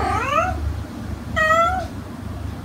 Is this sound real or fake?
real